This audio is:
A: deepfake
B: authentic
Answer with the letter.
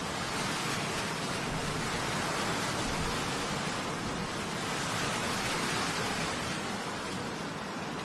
B